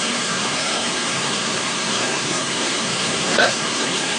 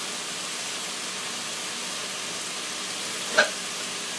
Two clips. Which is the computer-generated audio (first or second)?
first